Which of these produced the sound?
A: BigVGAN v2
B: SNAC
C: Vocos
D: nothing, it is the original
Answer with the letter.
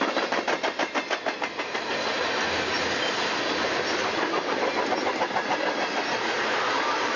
D